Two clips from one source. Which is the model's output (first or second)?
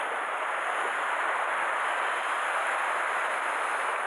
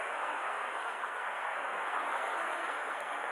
second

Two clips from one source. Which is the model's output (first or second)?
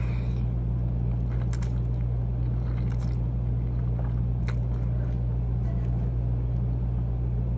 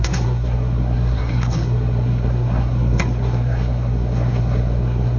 second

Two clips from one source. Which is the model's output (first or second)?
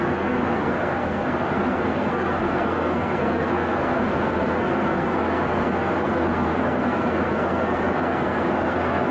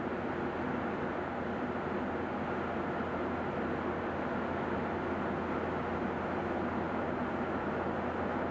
first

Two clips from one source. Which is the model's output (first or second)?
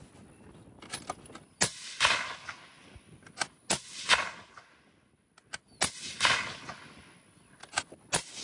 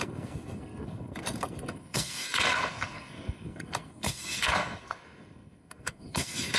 second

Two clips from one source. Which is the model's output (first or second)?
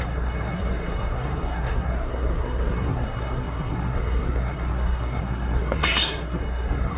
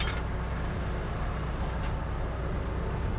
first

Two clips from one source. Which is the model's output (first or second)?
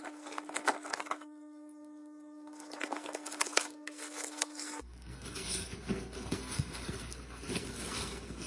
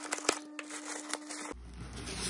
first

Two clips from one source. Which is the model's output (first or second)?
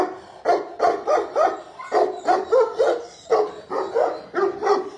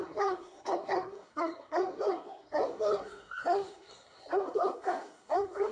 second